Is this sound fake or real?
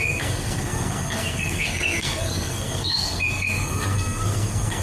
fake